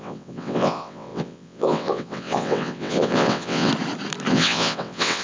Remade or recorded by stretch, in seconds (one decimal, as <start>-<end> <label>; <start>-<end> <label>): 0.0-3.7 remade; 3.7-4.3 recorded; 4.3-5.2 remade